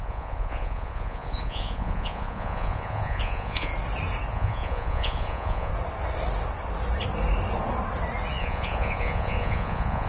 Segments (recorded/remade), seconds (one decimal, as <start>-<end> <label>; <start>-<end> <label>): 0.0-3.7 remade; 3.7-4.3 recorded; 4.3-5.7 remade; 5.7-8.4 recorded; 8.4-10.1 remade